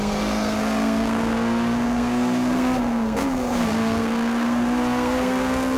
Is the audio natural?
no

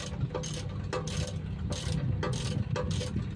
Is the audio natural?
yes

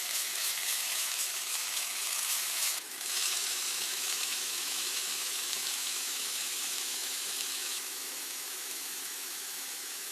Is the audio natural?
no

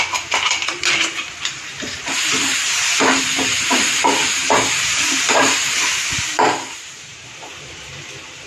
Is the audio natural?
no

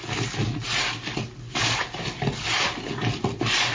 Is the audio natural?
yes